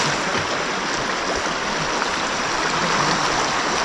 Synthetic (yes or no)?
no